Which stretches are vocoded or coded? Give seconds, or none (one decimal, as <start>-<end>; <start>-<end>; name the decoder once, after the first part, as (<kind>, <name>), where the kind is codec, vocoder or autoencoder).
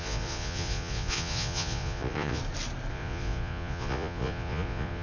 0.0-2.4 (vocoder, Vocos); 2.9-5.0